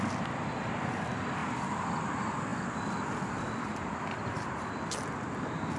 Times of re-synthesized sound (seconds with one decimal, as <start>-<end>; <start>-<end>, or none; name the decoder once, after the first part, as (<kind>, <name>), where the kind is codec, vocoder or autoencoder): none